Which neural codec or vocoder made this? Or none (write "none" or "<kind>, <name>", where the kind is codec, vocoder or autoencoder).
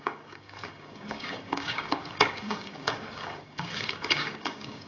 codec, DAC